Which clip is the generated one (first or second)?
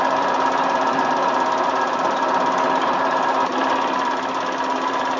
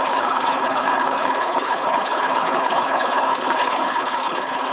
second